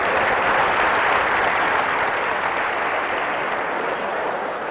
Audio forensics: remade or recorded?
recorded